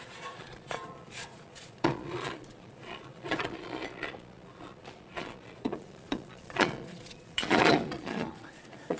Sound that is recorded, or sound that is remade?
remade